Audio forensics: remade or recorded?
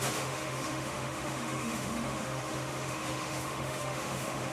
remade